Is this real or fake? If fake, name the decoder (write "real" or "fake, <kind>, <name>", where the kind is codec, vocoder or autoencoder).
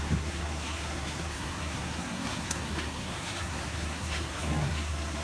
fake, codec, SNAC